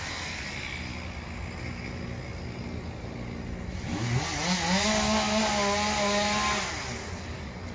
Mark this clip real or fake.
real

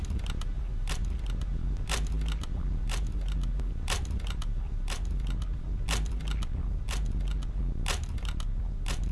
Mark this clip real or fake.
real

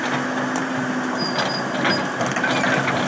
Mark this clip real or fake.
real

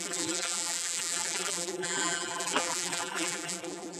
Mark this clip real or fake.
fake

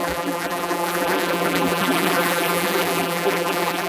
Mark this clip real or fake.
fake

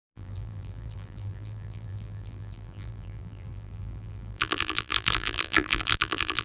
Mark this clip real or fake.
fake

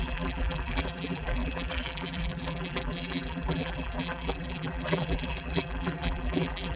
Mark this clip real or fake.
fake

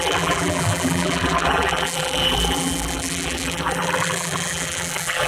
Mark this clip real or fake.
fake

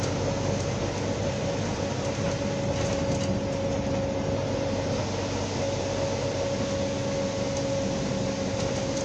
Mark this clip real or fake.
real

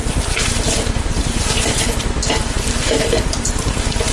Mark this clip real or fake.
fake